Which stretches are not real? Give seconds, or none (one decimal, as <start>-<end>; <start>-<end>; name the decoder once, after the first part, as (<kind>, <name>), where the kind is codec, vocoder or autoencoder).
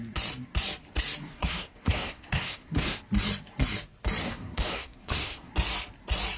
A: 1.3-3.0 (codec, SNAC); 4.2-5.5